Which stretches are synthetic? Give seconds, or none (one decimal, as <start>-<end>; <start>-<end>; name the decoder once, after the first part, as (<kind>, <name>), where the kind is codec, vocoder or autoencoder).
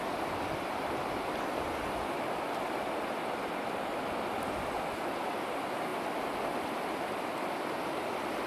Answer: none